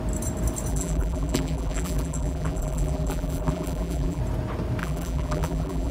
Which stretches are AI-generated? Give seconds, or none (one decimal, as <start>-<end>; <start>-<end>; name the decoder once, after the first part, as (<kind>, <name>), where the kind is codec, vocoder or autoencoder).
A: 0.7-4.2 (vocoder, BigVGAN v2); 4.8-5.9